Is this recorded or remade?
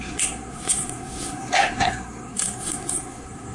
remade